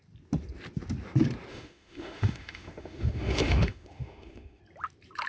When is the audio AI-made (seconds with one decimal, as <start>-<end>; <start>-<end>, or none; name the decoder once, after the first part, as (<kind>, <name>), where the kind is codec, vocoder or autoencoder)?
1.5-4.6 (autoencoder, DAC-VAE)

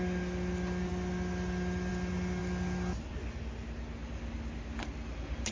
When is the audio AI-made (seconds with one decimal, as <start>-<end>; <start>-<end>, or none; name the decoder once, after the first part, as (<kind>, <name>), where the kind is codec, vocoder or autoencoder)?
none

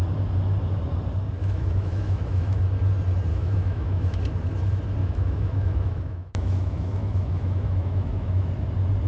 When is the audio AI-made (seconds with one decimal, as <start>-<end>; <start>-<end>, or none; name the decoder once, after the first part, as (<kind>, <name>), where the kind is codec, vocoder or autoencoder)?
1.4-2.6 (autoencoder, DAC-VAE); 3.3-4.2; 5.0-8.5

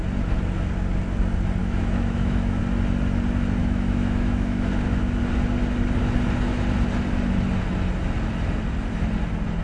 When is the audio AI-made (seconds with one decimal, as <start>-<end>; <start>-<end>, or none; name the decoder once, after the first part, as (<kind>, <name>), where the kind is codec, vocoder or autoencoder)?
1.6-2.6 (autoencoder, DAC-VAE); 3.6-5.2

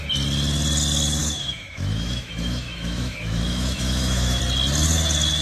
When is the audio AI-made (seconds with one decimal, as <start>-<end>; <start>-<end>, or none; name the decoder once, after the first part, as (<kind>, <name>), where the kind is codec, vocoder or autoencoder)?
1.2-4.4 (autoencoder, DAC-VAE)

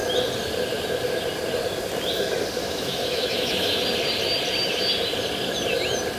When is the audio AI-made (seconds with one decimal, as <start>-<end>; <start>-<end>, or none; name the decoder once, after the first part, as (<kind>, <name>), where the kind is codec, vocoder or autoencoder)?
2.6-3.8 (autoencoder, DAC-VAE)

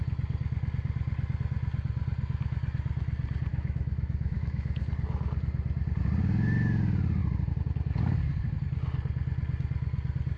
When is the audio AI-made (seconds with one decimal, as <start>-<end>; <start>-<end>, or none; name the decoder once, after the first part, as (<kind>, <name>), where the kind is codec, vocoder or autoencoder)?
3.5-4.9 (autoencoder, DAC-VAE)